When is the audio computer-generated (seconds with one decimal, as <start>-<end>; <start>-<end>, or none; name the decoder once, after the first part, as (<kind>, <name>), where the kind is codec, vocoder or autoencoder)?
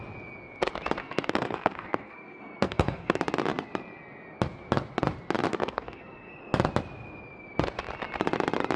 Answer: 1.0-3.2 (codec, SNAC); 5.5-6.3